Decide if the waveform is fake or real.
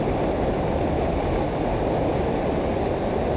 real